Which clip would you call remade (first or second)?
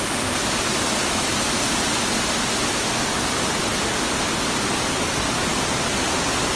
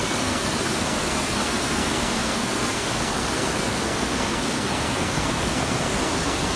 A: second